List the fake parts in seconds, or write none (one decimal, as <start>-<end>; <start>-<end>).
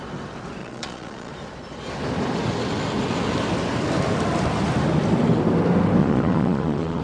0.6-1.3; 6.0-7.0